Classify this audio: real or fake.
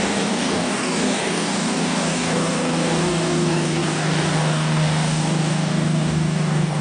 fake